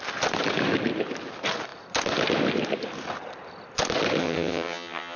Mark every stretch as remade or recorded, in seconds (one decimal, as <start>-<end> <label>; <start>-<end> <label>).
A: 0.0-4.2 recorded; 4.2-5.2 remade